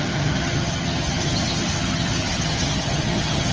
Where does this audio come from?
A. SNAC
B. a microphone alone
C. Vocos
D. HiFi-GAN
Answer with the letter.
D